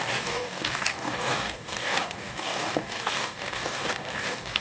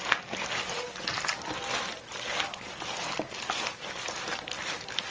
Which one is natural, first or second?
second